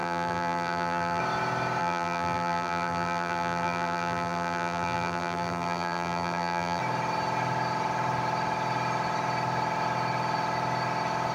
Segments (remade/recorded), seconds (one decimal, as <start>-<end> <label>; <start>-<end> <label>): 0.0-1.2 remade; 1.2-1.8 recorded; 1.8-6.8 remade; 6.8-11.3 recorded